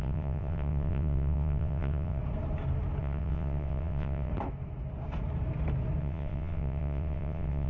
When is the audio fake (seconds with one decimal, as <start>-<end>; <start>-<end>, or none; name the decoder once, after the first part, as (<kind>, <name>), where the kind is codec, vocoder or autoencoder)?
0.0-2.2 (vocoder, WaveNeXt); 3.0-4.3; 6.0-7.7